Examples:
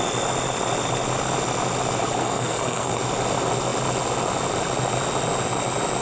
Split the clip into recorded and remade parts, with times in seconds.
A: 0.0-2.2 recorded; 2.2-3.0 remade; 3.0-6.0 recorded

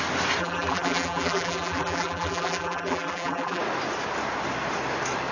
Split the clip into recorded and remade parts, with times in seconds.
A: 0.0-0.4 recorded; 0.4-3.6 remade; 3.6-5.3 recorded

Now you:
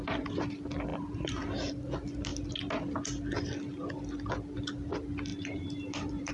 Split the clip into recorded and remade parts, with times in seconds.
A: 0.0-0.9 recorded; 0.9-1.7 remade; 1.7-5.3 recorded; 5.3-6.3 remade